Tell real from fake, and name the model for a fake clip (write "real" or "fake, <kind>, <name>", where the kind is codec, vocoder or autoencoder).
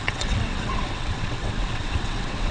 fake, vocoder, WaveNeXt